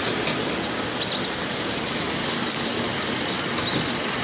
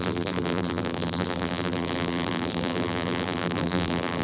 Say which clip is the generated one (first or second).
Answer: second